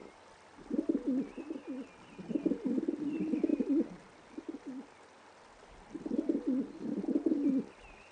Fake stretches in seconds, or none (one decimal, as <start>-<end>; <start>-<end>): none